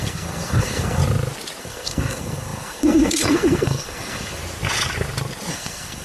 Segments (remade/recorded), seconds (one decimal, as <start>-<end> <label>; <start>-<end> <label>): 0.0-1.0 remade; 1.0-1.6 recorded; 1.6-4.4 remade; 4.4-5.5 recorded; 5.5-6.0 remade